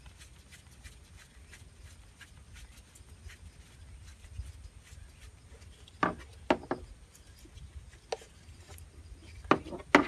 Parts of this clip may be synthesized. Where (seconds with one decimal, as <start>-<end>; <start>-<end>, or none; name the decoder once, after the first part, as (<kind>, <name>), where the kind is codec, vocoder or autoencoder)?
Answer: none